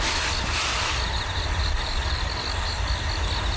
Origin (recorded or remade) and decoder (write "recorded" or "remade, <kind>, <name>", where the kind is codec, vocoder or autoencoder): recorded